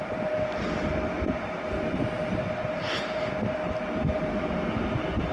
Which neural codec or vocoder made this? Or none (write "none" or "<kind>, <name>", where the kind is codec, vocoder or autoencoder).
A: none